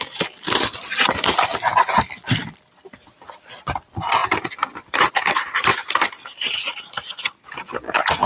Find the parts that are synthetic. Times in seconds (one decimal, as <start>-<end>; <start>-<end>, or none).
0.0-8.3